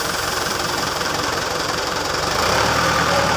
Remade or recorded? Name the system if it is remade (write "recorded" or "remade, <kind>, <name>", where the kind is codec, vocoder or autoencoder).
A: remade, vocoder, BigVGAN v2